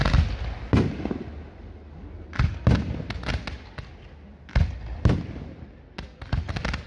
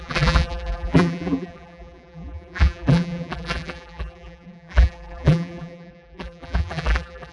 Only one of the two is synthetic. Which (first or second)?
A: second